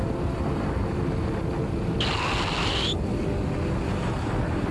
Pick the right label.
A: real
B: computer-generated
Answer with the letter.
A